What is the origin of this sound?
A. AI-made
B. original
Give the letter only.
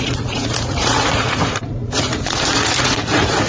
A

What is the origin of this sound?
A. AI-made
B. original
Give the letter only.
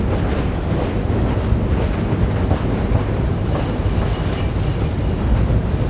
B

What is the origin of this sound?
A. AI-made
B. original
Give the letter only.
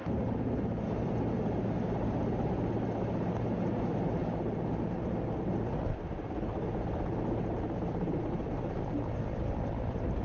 B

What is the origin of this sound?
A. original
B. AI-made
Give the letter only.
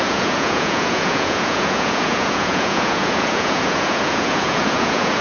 B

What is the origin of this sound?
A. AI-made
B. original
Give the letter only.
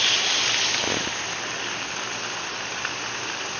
B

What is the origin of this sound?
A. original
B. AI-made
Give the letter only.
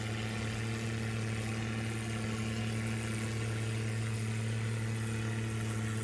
A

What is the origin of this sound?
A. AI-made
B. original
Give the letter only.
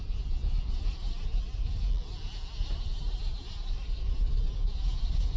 B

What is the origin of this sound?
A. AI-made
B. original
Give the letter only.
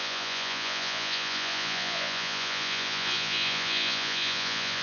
A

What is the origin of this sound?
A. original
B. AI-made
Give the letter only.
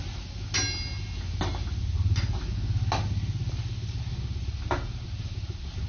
A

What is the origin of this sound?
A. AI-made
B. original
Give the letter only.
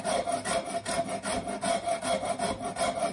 B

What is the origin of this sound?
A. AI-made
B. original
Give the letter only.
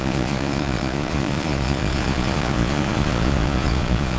A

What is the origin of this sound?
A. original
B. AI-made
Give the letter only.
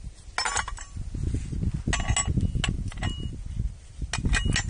A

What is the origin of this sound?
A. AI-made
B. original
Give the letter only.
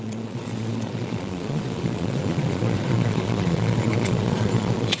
A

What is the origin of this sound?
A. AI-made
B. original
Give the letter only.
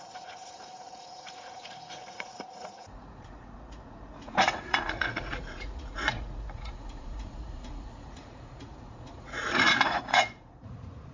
A